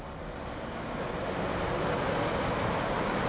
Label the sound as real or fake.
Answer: real